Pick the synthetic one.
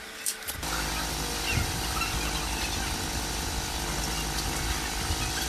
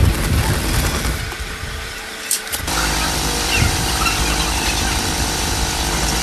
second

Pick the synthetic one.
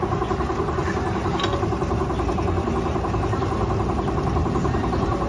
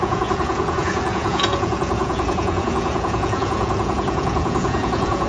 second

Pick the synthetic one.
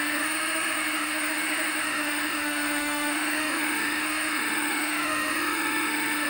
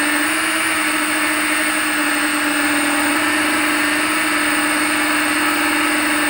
first